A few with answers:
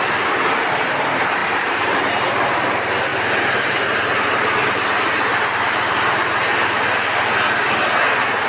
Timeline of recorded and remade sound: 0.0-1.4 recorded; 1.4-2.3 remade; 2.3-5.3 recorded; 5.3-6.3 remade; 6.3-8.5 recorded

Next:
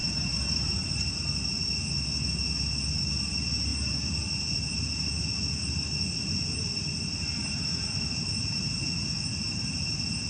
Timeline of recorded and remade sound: 0.0-1.0 remade; 1.0-10.3 recorded

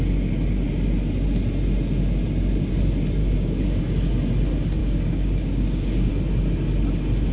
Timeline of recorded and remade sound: 0.0-3.2 recorded; 3.2-3.8 remade; 3.8-4.8 recorded; 4.8-6.1 remade; 6.1-7.3 recorded

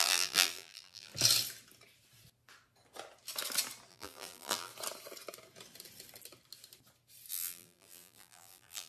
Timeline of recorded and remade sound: 0.0-1.1 remade; 1.1-3.9 recorded; 3.9-4.7 remade; 4.7-7.3 recorded; 7.3-8.9 remade

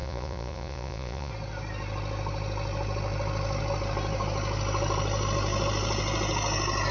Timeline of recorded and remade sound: 0.0-1.3 remade; 1.3-6.9 recorded